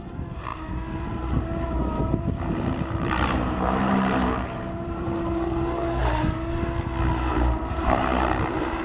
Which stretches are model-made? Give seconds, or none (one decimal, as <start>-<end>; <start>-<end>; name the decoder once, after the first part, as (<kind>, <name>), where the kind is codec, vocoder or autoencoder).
0.0-6.0 (vocoder, BigVGAN v2); 7.3-8.8